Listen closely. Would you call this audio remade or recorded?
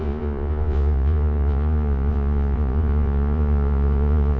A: remade